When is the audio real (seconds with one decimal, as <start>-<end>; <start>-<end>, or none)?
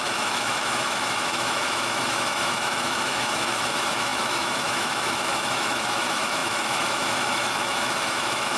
none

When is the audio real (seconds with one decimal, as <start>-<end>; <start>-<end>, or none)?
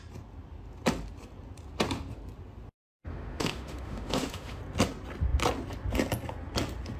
0.0-3.1; 4.6-7.0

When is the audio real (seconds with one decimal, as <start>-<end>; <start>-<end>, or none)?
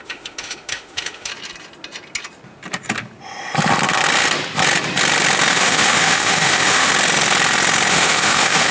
1.3-5.5; 6.9-7.9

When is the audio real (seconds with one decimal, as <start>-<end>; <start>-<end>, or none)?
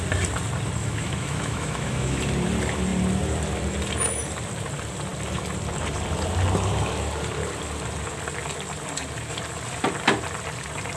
0.0-0.8; 2.2-11.0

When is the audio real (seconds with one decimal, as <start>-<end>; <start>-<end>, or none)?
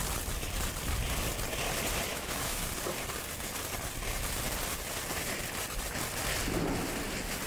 0.0-2.1; 2.6-7.5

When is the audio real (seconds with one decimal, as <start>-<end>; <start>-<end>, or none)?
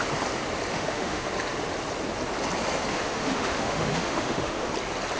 0.0-0.7; 1.3-2.9; 4.7-5.2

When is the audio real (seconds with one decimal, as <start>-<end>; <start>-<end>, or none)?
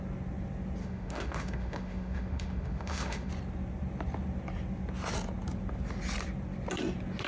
0.0-0.8; 3.3-7.3